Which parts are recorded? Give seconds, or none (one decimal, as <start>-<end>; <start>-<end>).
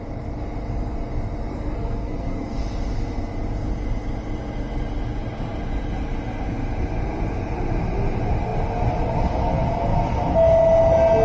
0.0-1.5; 2.6-11.2